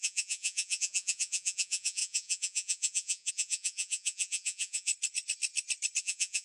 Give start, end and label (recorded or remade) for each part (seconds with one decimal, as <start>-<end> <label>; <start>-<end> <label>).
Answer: 0.0-4.9 remade; 4.9-6.0 recorded; 6.0-6.4 remade